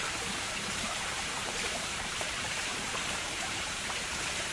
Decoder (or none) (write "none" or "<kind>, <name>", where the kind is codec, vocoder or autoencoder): vocoder, BigVGAN v2